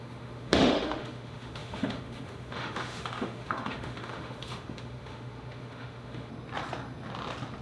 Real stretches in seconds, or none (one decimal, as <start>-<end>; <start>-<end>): 6.3-7.6